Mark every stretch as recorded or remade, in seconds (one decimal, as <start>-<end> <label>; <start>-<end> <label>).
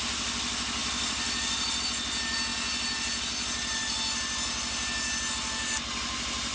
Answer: 0.0-0.8 recorded; 0.8-1.8 remade; 1.8-6.5 recorded